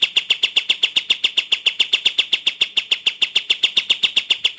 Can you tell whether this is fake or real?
real